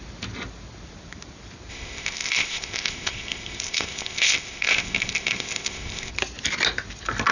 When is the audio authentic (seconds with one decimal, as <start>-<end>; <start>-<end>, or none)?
0.0-1.7; 6.1-7.3